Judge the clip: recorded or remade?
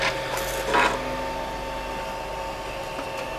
recorded